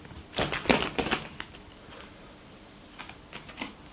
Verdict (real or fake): real